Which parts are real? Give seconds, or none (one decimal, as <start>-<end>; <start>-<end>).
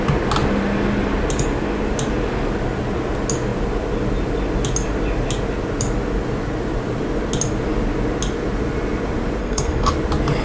0.0-9.4; 9.9-10.4